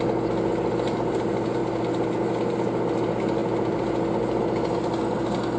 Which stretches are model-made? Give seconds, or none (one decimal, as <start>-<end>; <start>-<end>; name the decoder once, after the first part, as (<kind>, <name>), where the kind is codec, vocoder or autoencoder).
none